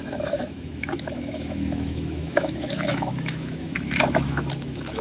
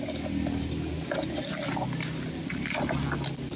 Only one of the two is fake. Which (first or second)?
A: first